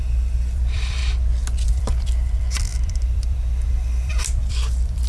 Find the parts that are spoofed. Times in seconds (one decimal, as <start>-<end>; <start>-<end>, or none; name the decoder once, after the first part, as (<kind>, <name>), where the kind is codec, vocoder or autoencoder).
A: 0.0-1.0 (vocoder, BigVGAN v2); 1.7-5.1